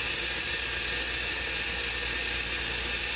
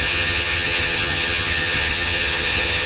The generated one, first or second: second